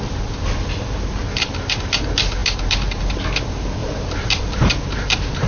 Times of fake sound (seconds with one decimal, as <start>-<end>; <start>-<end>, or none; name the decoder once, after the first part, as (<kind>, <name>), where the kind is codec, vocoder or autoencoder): 3.8-4.7 (vocoder, BigVGAN v2)